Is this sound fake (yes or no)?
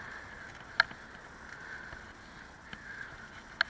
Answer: no